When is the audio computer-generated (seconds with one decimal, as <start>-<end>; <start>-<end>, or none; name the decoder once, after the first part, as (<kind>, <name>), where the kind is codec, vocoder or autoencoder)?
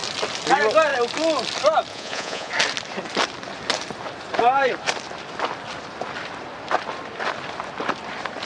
1.9-2.5 (vocoder, Vocos)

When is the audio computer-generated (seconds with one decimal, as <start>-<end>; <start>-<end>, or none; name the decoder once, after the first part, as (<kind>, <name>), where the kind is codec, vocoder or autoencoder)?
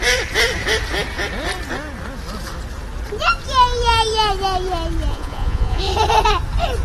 5.1-5.8 (vocoder, Vocos)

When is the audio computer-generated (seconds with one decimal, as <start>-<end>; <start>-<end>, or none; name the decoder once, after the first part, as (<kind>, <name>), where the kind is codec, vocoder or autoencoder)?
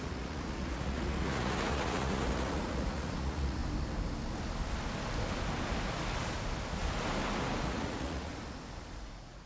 0.0-3.6 (vocoder, Vocos); 7.6-8.3; 9.0-9.5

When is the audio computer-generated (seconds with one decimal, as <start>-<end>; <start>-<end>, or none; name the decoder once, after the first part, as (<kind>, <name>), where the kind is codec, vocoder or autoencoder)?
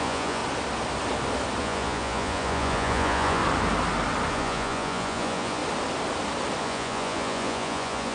0.0-0.4 (vocoder, Vocos); 1.6-3.4; 4.3-5.6; 6.6-8.1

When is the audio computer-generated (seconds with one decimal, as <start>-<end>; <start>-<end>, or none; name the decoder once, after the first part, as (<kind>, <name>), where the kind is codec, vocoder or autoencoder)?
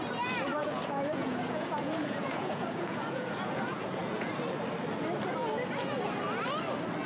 0.6-4.3 (vocoder, Vocos)